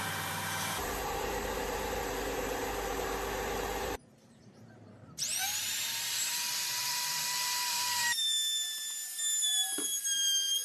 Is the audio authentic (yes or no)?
no